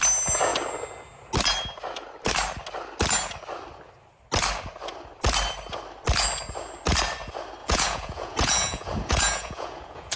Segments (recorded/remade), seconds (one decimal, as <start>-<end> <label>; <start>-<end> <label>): 0.0-7.6 recorded; 7.6-10.2 remade